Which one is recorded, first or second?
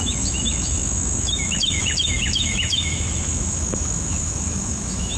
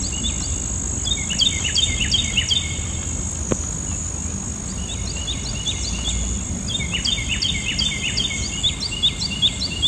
second